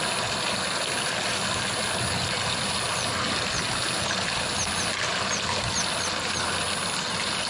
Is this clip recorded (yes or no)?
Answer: yes